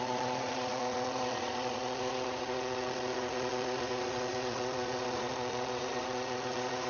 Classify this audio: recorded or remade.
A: remade